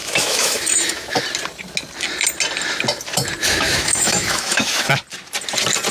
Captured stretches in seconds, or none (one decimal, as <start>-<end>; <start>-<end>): 1.2-3.4; 4.9-5.9